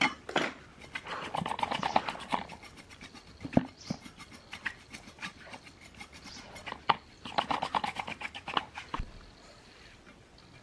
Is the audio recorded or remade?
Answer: recorded